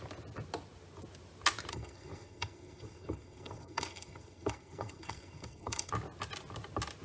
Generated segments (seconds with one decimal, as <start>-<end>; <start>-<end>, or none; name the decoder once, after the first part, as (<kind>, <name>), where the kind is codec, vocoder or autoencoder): 1.7-5.9 (codec, SNAC)